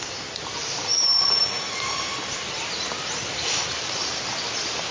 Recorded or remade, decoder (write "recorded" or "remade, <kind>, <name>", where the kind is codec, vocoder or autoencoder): recorded